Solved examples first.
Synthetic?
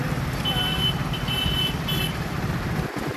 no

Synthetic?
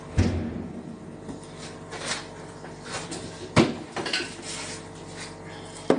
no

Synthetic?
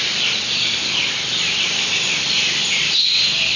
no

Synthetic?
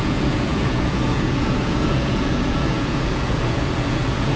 yes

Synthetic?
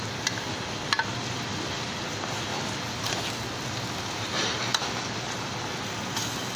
no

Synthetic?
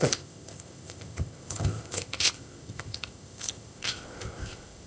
yes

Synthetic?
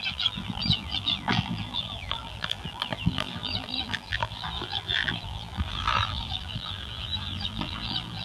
yes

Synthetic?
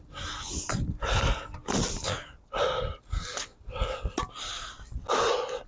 no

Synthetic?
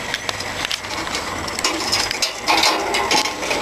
no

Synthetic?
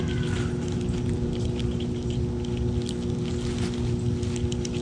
no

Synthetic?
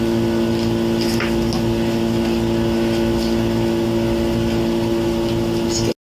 no